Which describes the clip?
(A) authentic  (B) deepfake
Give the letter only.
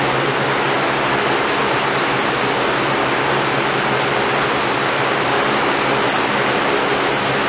A